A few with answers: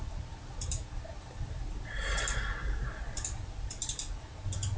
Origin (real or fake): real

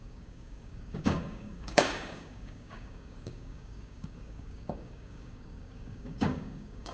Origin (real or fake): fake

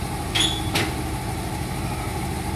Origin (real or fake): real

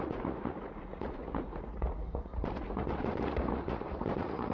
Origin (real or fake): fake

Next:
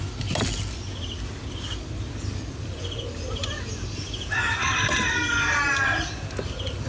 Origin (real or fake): real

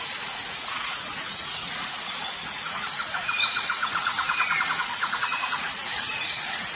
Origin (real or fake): fake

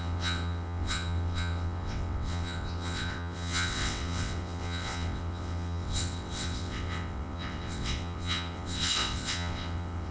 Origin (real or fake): fake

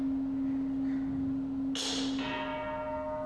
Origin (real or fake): real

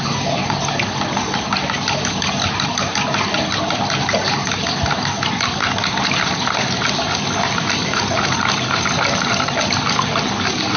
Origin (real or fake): real